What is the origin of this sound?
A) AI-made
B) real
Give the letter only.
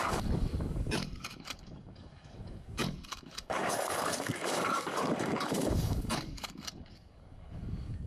A